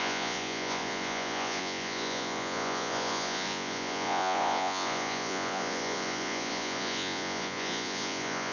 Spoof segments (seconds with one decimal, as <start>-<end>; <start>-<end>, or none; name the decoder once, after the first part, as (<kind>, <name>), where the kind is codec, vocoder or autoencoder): 0.0-8.5 (vocoder, Vocos)